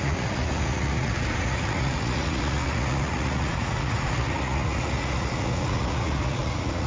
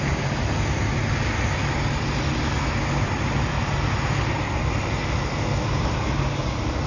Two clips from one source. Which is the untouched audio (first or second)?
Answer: second